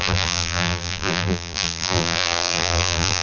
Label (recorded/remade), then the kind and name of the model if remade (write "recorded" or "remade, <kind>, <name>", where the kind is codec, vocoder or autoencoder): remade, vocoder, BigVGAN v2